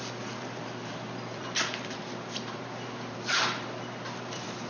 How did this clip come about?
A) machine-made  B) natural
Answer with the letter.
A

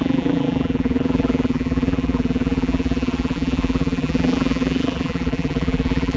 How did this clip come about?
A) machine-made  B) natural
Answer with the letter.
A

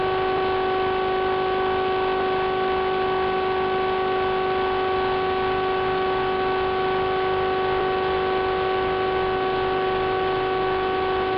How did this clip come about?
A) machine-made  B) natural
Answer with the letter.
B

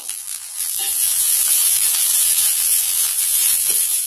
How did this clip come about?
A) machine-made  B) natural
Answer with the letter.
A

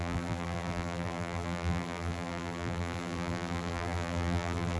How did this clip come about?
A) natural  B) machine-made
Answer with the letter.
B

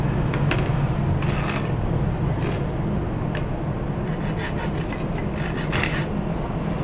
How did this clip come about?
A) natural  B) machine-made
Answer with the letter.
A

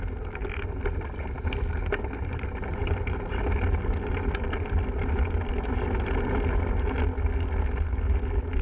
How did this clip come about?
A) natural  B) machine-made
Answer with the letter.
A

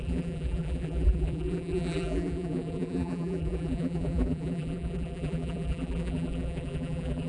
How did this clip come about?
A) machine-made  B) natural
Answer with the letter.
A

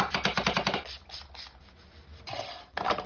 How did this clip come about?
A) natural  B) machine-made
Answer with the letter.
A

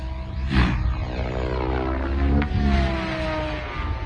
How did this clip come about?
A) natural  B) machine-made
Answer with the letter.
A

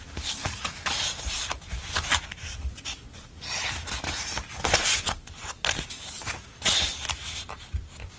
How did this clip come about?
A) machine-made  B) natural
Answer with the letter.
B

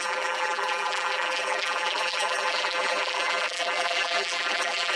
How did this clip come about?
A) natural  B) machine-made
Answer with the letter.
B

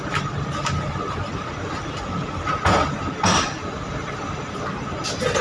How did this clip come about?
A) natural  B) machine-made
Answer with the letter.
A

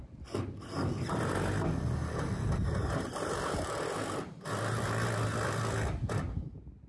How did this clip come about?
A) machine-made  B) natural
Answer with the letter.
B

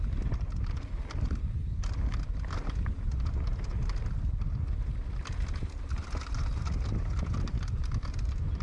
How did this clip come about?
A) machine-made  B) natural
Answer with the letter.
B